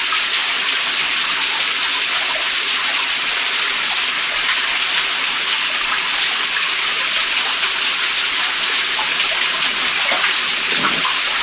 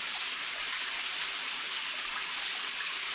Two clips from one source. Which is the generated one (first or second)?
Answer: second